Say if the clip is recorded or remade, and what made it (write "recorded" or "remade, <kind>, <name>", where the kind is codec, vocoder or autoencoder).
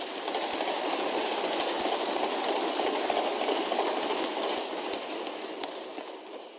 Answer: recorded